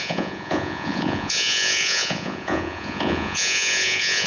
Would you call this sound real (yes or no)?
no